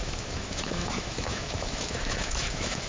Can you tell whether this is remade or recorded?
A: remade